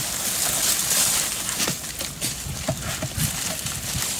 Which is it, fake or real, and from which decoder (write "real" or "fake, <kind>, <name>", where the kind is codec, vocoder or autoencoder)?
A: real